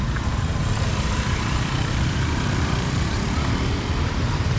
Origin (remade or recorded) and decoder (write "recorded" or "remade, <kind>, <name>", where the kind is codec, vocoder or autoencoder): remade, vocoder, BigVGAN v2